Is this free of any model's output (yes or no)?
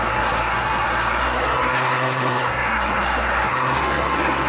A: no